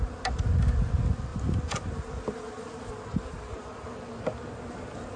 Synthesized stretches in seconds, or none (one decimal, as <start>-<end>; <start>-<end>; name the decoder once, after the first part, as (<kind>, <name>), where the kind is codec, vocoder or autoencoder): none